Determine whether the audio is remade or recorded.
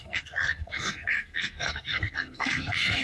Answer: remade